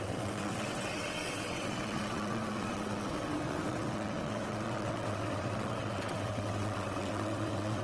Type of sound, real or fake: fake